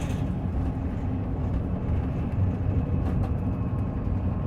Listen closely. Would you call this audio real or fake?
real